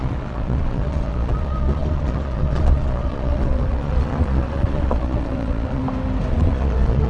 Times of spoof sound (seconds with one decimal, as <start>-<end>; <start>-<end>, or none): 0.0-5.8; 6.3-7.1